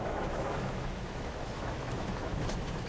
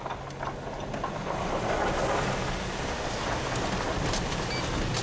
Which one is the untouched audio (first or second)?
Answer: second